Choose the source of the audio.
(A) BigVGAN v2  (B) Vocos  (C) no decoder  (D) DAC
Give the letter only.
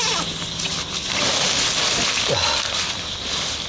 C